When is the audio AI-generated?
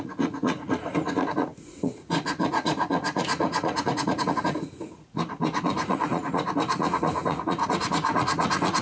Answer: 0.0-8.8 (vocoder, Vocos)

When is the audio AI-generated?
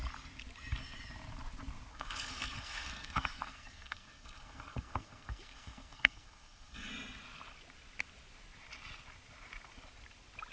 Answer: 1.9-6.9 (codec, SNAC)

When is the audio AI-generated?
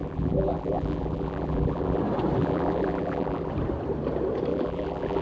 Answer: 0.0-2.0 (vocoder, BigVGAN v2); 2.4-3.5; 4.5-5.2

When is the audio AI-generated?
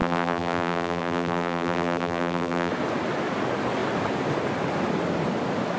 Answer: 0.0-2.7 (vocoder, BigVGAN v2)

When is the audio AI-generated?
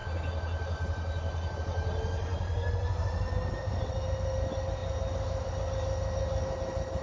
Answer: none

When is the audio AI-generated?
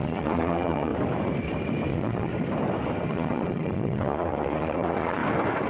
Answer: 0.0-0.9 (vocoder, Vocos); 1.9-2.3; 3.1-5.2